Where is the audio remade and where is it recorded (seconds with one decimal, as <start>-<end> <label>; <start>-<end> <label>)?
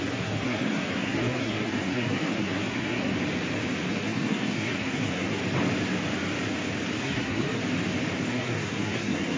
0.0-3.1 remade; 3.1-3.9 recorded; 3.9-5.4 remade; 5.4-7.0 recorded; 7.0-7.6 remade; 7.6-8.3 recorded; 8.3-9.4 remade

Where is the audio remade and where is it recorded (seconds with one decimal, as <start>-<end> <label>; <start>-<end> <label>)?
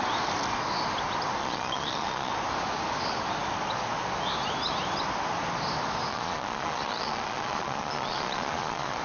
0.0-1.4 recorded; 1.4-2.3 remade; 2.3-6.1 recorded; 6.1-9.0 remade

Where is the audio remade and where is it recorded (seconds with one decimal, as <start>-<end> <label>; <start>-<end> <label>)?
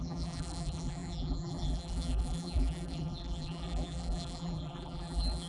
0.0-5.5 remade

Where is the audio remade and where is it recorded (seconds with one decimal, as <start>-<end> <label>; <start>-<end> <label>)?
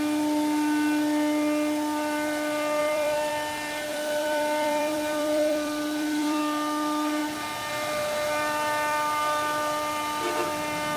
0.0-2.8 recorded; 2.8-3.3 remade; 3.3-3.9 recorded; 3.9-6.4 remade; 6.4-11.0 recorded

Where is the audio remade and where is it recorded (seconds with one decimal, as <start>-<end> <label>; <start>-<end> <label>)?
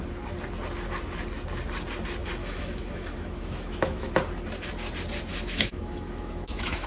0.0-2.4 recorded; 2.4-4.1 remade; 4.1-5.3 recorded; 5.3-6.9 remade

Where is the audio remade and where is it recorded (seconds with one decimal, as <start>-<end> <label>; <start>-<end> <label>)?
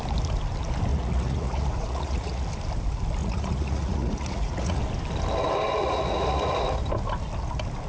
0.0-0.9 recorded; 0.9-2.4 remade; 2.4-3.2 recorded; 3.2-4.8 remade; 4.8-5.7 recorded; 5.7-6.6 remade; 6.6-7.9 recorded